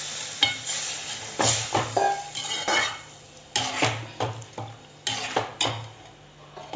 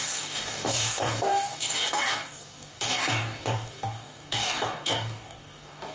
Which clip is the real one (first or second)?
first